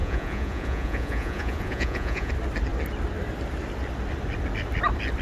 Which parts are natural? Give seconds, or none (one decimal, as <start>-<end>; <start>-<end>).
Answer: 2.3-5.2